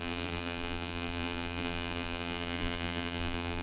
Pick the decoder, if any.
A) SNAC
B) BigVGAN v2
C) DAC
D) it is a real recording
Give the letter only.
B